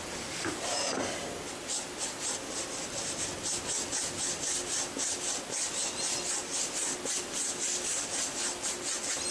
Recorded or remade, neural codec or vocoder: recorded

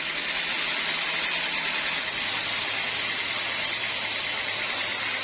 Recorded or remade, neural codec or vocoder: recorded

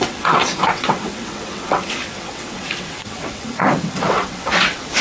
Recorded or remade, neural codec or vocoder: remade, vocoder, WaveNeXt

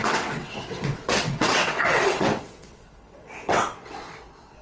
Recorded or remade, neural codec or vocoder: remade, vocoder, WaveNeXt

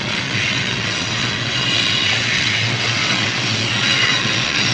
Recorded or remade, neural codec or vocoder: remade, vocoder, WaveNeXt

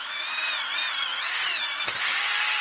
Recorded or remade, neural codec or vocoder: recorded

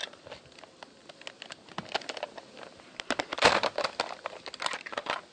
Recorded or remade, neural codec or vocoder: recorded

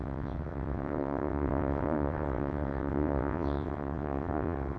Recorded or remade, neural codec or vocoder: remade, vocoder, WaveNeXt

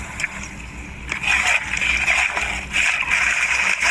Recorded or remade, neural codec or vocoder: recorded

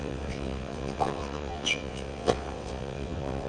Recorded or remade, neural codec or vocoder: remade, vocoder, WaveNeXt